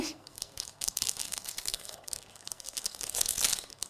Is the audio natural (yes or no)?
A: no